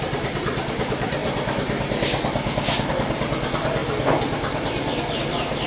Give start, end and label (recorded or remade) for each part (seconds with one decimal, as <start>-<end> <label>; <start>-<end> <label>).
0.0-3.8 remade; 3.8-5.3 recorded; 5.3-5.7 remade